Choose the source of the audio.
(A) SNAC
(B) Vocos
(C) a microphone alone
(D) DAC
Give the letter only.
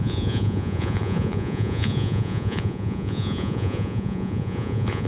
B